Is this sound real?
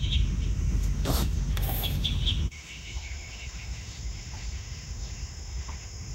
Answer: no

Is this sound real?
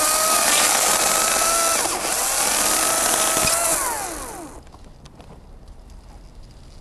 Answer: yes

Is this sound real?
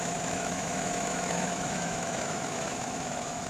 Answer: no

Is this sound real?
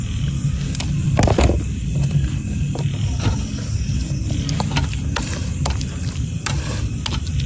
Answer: yes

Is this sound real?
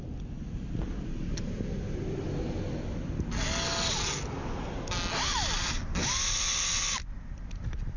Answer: yes